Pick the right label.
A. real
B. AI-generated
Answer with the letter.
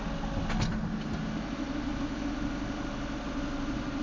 A